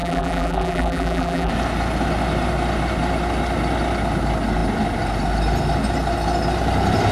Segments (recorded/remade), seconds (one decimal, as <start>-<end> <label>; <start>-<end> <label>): 0.0-1.5 remade; 1.5-7.1 recorded